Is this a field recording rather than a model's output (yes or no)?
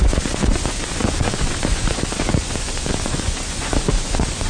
no